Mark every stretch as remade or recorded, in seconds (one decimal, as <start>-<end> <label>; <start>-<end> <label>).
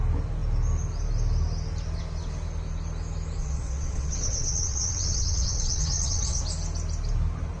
0.0-3.4 recorded; 3.4-6.4 remade; 6.4-7.6 recorded